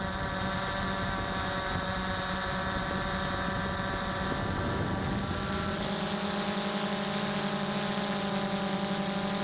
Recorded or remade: recorded